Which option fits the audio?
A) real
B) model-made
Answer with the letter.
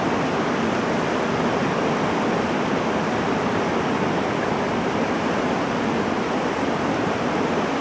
A